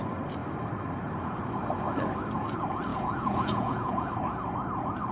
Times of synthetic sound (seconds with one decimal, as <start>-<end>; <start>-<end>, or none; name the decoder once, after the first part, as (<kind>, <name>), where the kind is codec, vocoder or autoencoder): 2.9-4.1 (vocoder, Vocos)